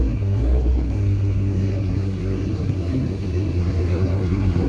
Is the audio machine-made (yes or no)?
yes